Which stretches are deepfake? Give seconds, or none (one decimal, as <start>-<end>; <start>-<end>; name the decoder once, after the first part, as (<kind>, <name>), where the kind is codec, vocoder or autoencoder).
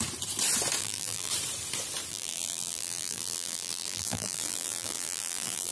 0.8-1.3 (vocoder, BigVGAN v2); 2.1-5.7